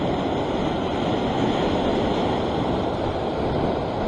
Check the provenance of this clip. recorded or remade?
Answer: recorded